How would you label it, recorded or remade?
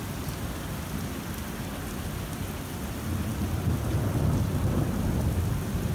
recorded